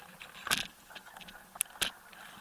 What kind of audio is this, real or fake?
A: real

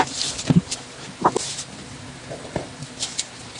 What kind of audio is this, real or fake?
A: real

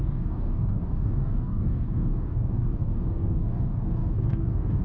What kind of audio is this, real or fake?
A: fake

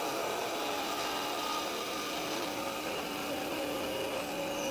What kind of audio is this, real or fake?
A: real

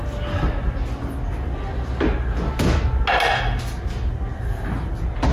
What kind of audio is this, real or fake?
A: real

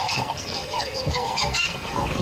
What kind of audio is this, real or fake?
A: fake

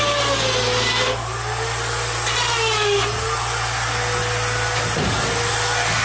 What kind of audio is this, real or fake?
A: real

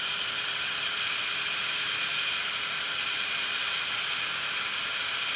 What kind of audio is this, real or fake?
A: real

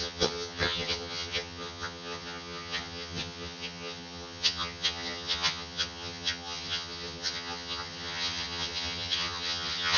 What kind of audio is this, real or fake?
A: fake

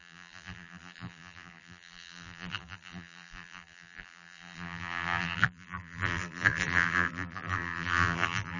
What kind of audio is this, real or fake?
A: fake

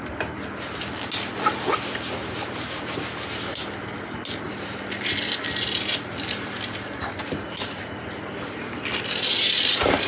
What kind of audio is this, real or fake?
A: real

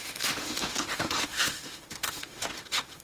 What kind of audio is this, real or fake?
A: fake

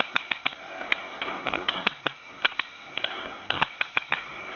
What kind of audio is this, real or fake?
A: fake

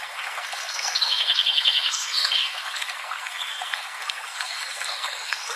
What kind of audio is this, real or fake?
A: fake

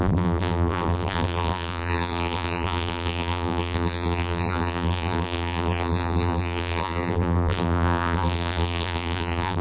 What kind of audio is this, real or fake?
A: fake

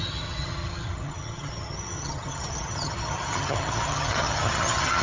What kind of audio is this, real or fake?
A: fake